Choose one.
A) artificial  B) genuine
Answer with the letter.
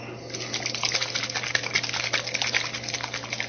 B